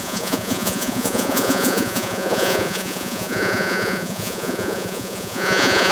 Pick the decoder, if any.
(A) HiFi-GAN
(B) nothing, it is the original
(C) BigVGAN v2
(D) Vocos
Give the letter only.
D